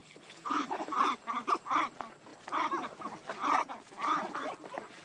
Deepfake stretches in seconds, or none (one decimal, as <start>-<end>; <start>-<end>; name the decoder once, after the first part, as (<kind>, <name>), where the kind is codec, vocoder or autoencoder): 0.0-0.9 (codec, HILCodec)